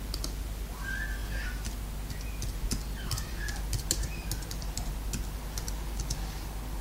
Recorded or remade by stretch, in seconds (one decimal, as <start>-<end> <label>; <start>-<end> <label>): 0.0-6.8 recorded